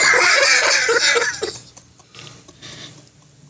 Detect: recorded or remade recorded